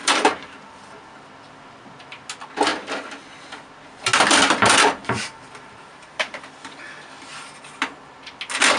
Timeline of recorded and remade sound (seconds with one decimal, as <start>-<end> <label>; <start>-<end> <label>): 0.0-1.0 remade; 1.0-5.0 recorded; 5.0-6.3 remade; 6.3-8.8 recorded

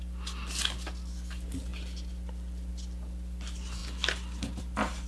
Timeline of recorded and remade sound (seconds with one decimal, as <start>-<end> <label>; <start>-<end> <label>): 0.0-5.1 recorded

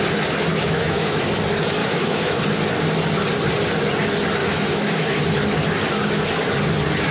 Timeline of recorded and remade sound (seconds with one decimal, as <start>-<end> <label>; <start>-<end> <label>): 0.0-0.5 recorded; 0.5-1.2 remade; 1.2-1.8 recorded; 1.8-2.4 remade; 2.4-4.4 recorded; 4.4-5.2 remade; 5.2-7.1 recorded

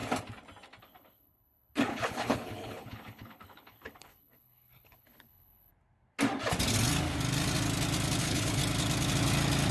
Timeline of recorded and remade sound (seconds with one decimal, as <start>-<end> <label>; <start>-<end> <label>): 0.0-0.8 recorded; 0.8-5.7 remade; 5.7-8.2 recorded; 8.2-8.6 remade; 8.6-9.7 recorded

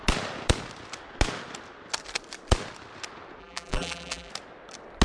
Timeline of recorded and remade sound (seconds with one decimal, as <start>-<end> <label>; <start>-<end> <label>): 0.0-3.4 recorded; 3.4-4.3 remade; 4.3-5.0 recorded